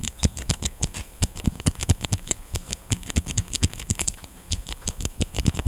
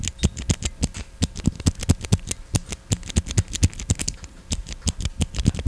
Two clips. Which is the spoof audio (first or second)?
first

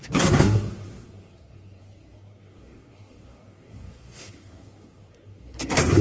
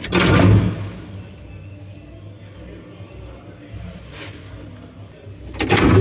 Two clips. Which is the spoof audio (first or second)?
first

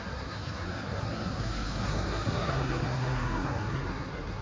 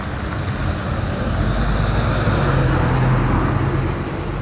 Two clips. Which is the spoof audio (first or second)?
first